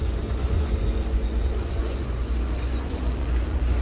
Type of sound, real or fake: fake